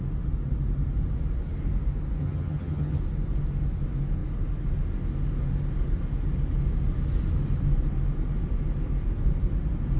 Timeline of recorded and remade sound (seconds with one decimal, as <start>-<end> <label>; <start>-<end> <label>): 0.0-2.2 recorded; 2.2-3.0 remade; 3.0-10.0 recorded